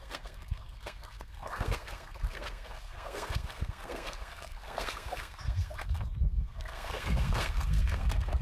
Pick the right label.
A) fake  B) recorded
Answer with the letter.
A